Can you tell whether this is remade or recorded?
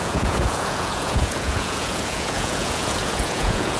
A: remade